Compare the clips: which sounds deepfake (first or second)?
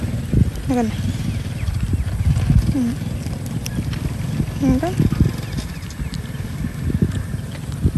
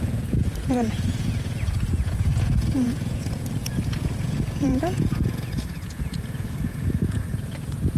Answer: second